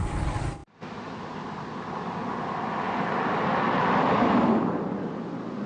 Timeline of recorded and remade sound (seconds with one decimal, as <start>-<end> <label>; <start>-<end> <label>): 0.0-5.7 recorded